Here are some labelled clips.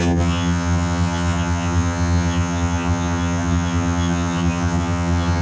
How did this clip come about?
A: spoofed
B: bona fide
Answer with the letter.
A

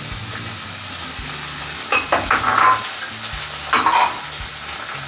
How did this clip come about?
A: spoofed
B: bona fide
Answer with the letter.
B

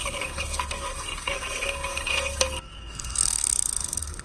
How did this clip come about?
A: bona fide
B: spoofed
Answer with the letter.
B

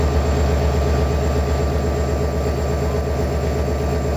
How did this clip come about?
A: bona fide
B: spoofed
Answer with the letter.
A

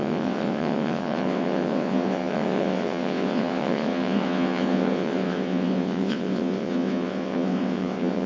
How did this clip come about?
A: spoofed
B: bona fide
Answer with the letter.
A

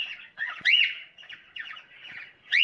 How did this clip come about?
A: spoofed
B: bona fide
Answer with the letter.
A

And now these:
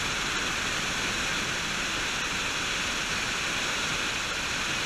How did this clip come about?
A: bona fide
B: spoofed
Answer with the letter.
B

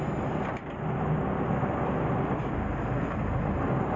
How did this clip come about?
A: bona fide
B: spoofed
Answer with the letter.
A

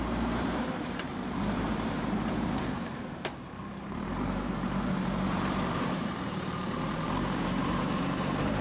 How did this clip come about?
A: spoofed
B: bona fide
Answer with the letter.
A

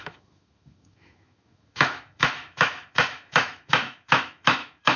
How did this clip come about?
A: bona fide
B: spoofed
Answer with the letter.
B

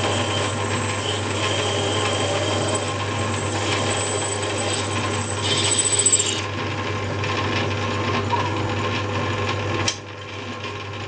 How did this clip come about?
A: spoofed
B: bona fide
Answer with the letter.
B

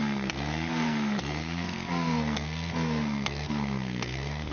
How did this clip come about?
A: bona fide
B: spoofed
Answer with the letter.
B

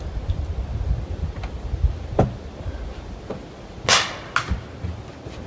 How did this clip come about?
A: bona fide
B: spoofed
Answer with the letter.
A